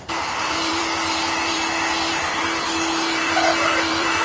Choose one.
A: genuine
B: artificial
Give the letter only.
B